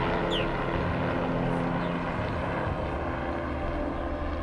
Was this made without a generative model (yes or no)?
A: yes